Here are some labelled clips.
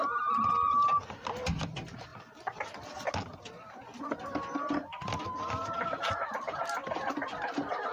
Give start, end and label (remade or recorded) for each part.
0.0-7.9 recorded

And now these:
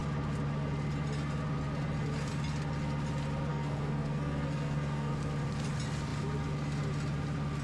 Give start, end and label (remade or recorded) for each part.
0.0-3.5 recorded; 3.5-5.1 remade; 5.1-7.6 recorded

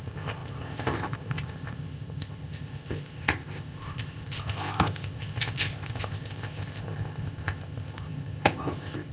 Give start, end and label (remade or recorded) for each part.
0.0-9.1 remade